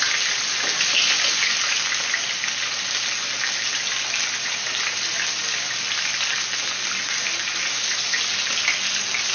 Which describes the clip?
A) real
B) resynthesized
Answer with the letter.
A